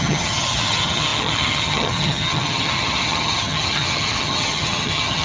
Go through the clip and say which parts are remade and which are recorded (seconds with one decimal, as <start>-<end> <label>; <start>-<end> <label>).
0.0-5.2 remade